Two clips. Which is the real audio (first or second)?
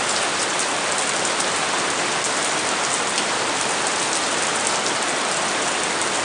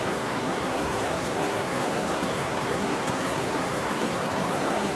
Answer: first